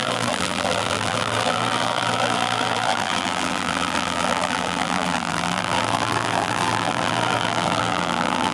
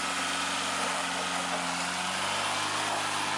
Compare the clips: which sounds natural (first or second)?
second